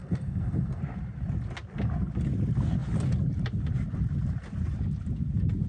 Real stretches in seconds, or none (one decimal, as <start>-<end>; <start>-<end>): 0.8-5.7